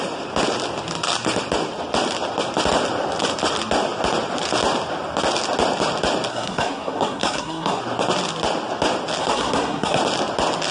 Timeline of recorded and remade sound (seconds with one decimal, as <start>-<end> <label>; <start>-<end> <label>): 0.0-6.3 recorded; 6.3-7.8 remade; 7.8-9.2 recorded; 9.2-10.0 remade; 10.0-10.7 recorded